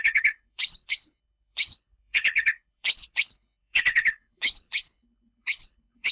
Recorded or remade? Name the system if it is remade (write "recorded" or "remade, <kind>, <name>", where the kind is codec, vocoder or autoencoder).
remade, codec, HILCodec